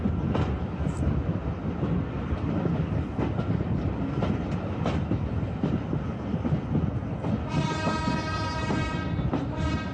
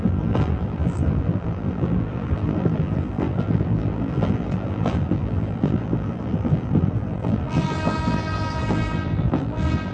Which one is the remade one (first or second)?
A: second